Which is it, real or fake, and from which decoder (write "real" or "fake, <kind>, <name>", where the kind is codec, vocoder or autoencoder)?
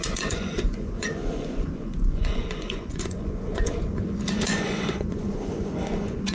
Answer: fake, vocoder, Vocos